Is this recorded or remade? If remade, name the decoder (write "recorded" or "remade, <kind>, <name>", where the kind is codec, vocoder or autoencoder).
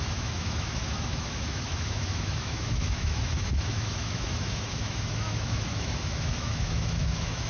remade, autoencoder, DAC-VAE